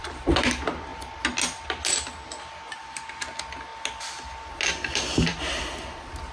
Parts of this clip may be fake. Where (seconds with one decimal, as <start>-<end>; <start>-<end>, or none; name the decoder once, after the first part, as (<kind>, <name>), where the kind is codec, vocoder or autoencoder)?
none